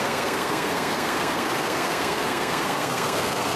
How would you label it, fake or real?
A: fake